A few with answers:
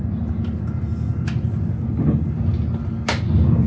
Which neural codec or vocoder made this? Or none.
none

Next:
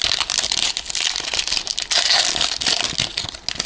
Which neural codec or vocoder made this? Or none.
none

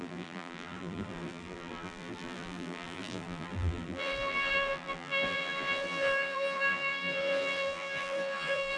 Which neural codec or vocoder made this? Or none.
vocoder, BigVGAN v2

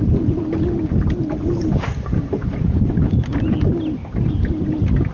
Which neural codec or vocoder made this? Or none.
none